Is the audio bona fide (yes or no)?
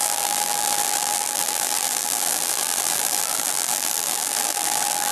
no